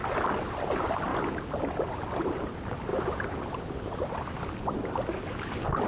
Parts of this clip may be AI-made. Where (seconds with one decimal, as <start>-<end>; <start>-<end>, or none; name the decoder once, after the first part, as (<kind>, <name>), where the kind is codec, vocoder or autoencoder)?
0.5-1.1 (vocoder, BigVGAN v2); 2.4-5.9